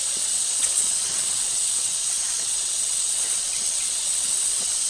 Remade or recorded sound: remade